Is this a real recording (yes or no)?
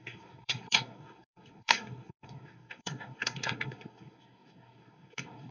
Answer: no